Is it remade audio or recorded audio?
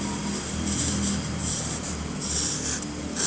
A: recorded